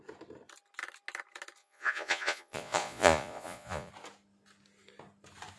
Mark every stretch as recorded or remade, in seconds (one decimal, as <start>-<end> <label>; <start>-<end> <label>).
0.0-1.6 recorded; 1.6-3.9 remade; 3.9-5.6 recorded